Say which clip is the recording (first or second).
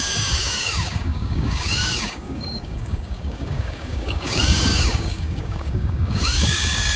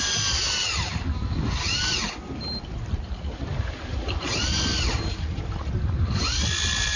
second